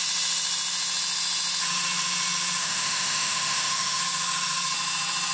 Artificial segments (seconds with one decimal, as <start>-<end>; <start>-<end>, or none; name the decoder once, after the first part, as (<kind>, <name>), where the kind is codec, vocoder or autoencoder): 2.6-4.0 (autoencoder, DAC-VAE)